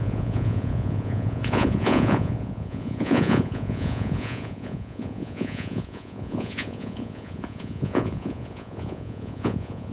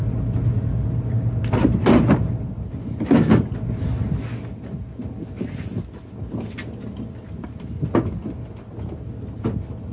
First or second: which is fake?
first